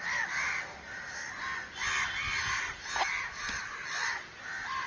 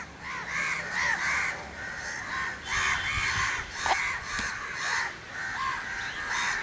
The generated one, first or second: second